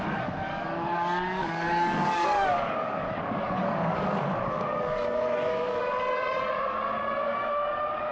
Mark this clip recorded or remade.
remade